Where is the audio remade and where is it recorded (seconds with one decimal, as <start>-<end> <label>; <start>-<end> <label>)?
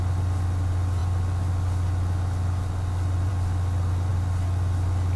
0.0-5.2 recorded